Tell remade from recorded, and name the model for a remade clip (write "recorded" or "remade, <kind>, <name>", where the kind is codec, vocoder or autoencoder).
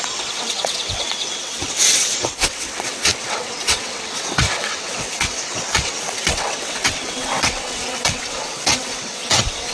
remade, vocoder, WaveNeXt